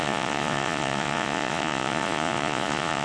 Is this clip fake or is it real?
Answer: fake